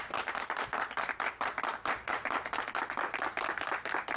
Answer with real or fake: real